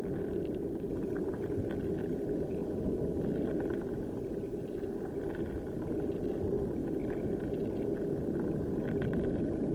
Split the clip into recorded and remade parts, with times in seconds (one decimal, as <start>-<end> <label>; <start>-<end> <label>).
0.0-2.6 recorded; 2.6-6.3 remade; 6.3-6.8 recorded; 6.8-7.5 remade; 7.5-9.7 recorded